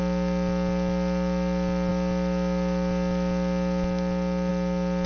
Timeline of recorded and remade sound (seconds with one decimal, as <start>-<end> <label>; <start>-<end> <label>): 0.0-5.1 recorded